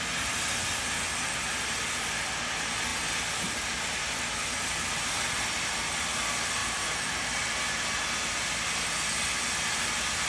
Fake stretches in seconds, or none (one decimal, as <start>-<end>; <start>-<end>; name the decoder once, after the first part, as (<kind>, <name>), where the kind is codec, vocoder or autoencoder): 6.6-7.3 (vocoder, BigVGAN v2)